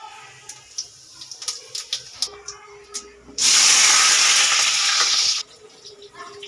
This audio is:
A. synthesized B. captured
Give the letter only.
B